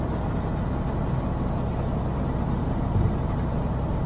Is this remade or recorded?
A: recorded